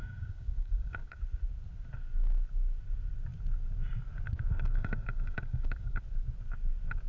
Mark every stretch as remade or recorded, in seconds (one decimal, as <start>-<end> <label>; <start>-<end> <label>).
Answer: 0.0-1.2 remade; 1.2-4.5 recorded; 4.5-6.0 remade; 6.0-7.1 recorded